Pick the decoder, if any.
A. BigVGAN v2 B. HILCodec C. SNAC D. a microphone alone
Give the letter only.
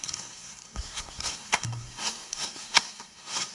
C